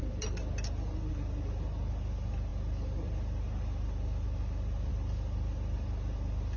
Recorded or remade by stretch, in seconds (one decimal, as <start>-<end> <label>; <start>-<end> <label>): 0.0-6.6 recorded